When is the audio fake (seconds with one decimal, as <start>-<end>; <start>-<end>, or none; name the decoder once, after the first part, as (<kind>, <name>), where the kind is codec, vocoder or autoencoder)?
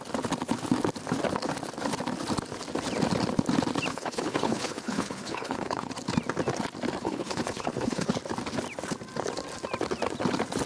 3.9-5.9 (codec, HILCodec); 7.0-8.1